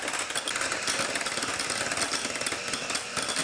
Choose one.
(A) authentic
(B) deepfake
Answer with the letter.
A